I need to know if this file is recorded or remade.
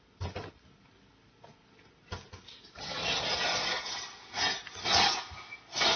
recorded